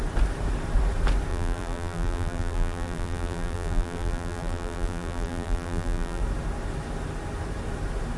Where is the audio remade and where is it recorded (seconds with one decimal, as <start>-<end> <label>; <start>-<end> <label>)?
0.0-1.3 recorded; 1.3-6.2 remade; 6.2-8.2 recorded